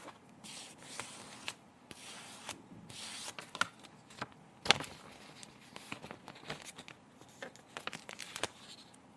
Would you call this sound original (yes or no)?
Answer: yes